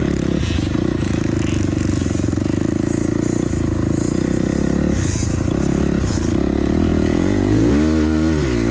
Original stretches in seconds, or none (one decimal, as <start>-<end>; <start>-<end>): 0.0-6.9; 7.7-8.7